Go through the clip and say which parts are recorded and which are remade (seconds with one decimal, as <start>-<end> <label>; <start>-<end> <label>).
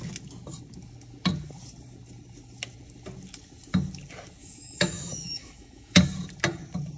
0.0-4.4 recorded; 4.4-6.0 remade; 6.0-7.0 recorded